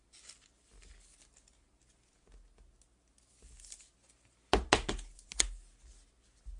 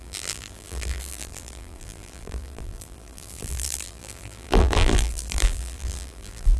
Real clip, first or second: first